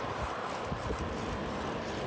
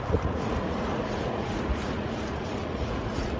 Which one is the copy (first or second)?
second